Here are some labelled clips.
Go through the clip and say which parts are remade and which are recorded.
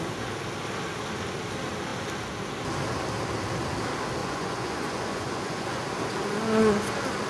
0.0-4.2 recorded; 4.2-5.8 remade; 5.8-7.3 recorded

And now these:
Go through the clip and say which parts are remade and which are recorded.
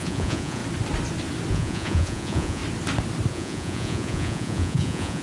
0.0-0.6 remade; 0.6-1.5 recorded; 1.5-2.6 remade; 2.6-3.3 recorded; 3.3-5.2 remade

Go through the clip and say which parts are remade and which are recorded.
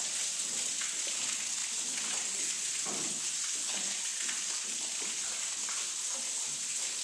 0.0-7.0 recorded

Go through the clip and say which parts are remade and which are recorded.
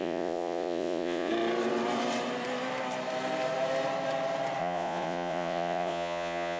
0.0-1.3 remade; 1.3-4.6 recorded; 4.6-6.6 remade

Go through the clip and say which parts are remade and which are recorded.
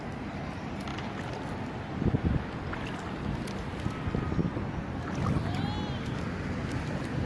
0.0-7.3 recorded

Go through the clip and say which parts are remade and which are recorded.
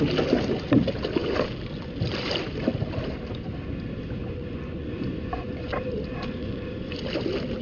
0.0-4.2 recorded; 4.2-5.7 remade; 5.7-6.4 recorded; 6.4-7.0 remade; 7.0-7.6 recorded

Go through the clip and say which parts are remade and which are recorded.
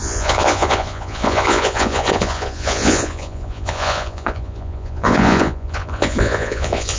0.0-7.0 remade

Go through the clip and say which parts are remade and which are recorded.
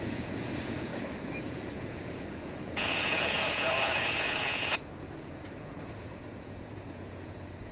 0.0-0.9 remade; 0.9-1.4 recorded; 1.4-7.7 remade